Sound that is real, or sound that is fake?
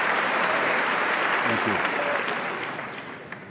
fake